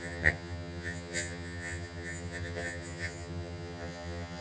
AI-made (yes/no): yes